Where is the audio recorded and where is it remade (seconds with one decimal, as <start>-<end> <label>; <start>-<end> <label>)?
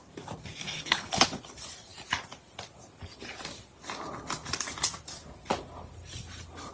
0.0-0.6 recorded; 0.6-1.2 remade; 1.2-6.7 recorded